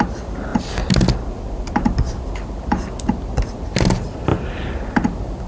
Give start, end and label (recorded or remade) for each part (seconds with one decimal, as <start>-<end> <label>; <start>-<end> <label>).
0.0-5.5 recorded